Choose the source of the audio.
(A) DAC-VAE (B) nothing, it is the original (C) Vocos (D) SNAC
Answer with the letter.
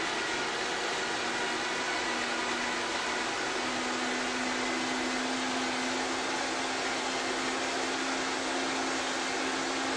B